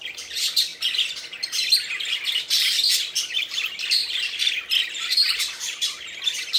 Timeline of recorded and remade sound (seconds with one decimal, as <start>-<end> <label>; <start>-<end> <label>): 0.0-0.7 remade; 0.7-3.4 recorded; 3.4-4.0 remade; 4.0-4.8 recorded; 4.8-6.6 remade